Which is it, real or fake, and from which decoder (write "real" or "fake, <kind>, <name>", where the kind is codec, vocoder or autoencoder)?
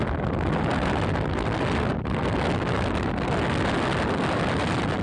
real